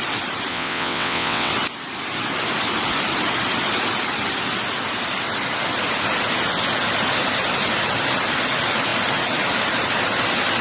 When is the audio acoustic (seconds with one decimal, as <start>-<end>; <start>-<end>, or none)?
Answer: 0.0-0.5; 1.5-10.6